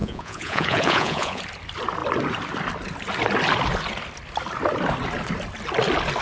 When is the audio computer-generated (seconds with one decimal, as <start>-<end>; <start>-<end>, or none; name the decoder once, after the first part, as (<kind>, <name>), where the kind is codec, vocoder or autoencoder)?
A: 0.0-1.4 (vocoder, Vocos)